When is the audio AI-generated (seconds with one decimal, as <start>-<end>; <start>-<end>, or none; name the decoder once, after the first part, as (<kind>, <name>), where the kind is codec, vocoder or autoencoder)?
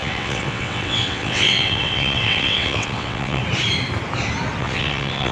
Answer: 0.0-3.4 (vocoder, WaveNeXt); 4.6-5.3